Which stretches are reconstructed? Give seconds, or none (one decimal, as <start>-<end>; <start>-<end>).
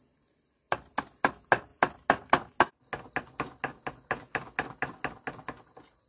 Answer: none